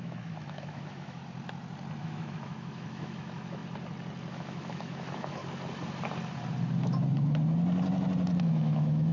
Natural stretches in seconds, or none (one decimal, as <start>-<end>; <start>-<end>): 1.2-2.0; 3.6-4.3; 5.4-8.4